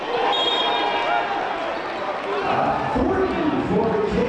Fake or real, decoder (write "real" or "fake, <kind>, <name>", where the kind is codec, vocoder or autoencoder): real